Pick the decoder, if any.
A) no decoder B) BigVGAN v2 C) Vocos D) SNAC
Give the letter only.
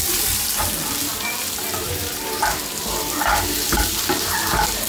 B